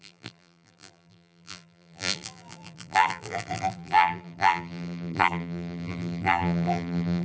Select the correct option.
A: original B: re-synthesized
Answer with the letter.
B